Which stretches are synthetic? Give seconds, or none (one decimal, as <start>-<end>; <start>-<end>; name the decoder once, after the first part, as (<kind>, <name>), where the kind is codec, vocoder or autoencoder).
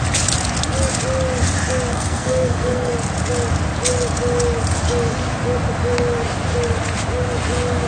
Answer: 1.9-2.9 (codec, SNAC)